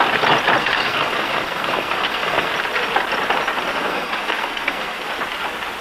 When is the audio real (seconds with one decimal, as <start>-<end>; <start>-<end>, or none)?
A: 0.0-0.6; 2.5-3.7; 5.1-5.8